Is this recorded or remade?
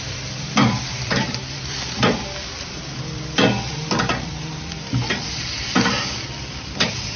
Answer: remade